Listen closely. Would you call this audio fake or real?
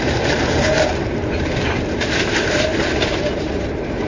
fake